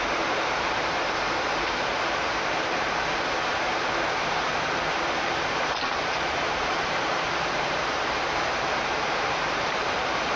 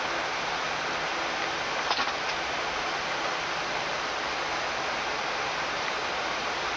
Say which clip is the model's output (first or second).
first